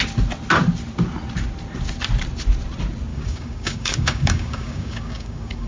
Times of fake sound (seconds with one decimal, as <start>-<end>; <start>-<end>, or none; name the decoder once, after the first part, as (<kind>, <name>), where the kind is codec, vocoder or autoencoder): 3.1-5.7 (codec, DAC)